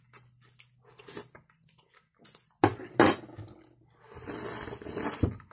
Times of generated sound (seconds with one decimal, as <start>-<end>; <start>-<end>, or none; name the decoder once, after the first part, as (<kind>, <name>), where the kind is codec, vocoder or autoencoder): none